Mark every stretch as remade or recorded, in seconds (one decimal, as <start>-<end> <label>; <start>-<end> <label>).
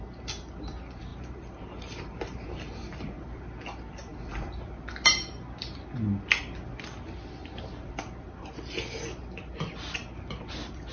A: 0.0-1.1 recorded; 1.1-3.4 remade; 3.4-7.4 recorded; 7.4-8.0 remade; 8.0-10.9 recorded